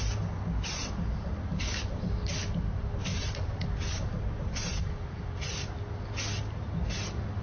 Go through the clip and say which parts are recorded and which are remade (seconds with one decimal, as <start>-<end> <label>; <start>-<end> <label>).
0.0-1.5 recorded; 1.5-2.3 remade; 2.3-4.7 recorded; 4.7-5.2 remade; 5.2-7.4 recorded